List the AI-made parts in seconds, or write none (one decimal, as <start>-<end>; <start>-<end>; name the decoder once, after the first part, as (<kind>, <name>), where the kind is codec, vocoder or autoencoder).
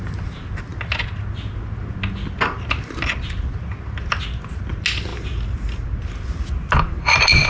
none